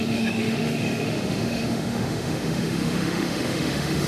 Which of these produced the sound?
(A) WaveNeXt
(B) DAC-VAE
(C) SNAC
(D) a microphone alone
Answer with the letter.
B